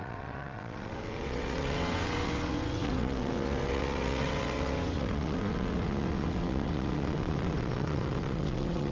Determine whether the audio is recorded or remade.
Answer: remade